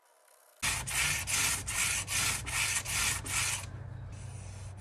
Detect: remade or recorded recorded